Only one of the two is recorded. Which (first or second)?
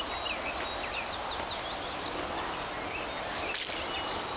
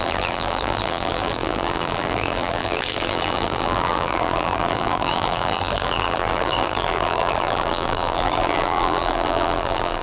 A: first